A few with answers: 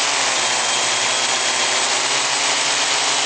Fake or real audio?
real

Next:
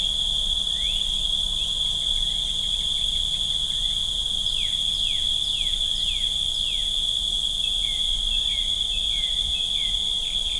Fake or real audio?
real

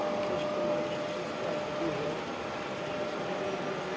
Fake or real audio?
real